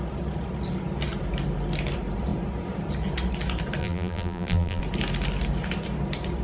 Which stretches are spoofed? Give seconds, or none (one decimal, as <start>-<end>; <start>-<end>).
3.8-4.8

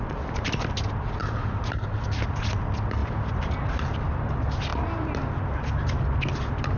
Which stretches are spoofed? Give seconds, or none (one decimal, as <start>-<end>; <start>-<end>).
1.2-2.4; 3.0-3.5

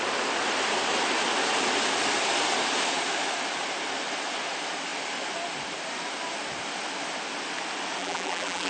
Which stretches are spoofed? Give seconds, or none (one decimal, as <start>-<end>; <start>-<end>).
8.0-8.7

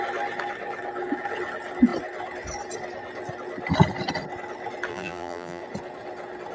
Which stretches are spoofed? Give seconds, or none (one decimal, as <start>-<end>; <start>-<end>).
4.9-5.6